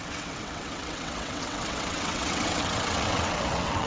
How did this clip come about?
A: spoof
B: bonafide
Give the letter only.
A